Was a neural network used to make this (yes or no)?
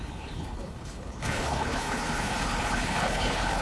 yes